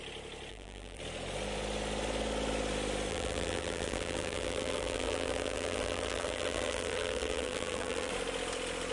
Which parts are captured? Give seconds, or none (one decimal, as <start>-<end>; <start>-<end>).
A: 0.0-0.5; 1.0-3.1; 8.1-8.9